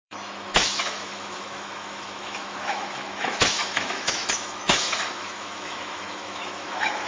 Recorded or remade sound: remade